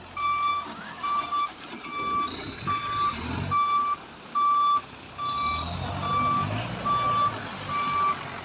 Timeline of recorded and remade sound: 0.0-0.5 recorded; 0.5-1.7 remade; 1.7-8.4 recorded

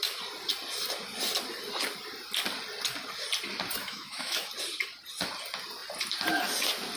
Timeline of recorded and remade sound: 0.0-3.8 recorded; 3.8-4.5 remade; 4.5-7.0 recorded

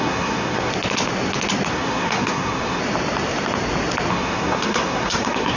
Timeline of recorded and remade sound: 0.0-0.7 remade; 0.7-1.7 recorded; 1.7-2.8 remade; 2.8-4.1 recorded; 4.1-5.6 remade

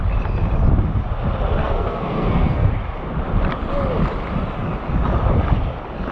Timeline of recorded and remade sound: 0.0-1.6 recorded; 1.6-2.7 remade; 2.7-6.1 recorded

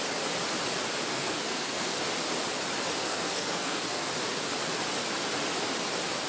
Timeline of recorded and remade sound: 0.0-1.1 recorded; 1.1-2.0 remade; 2.0-3.0 recorded; 3.0-4.1 remade; 4.1-6.3 recorded